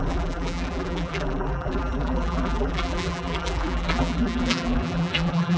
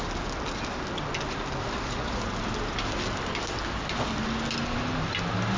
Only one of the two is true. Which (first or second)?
second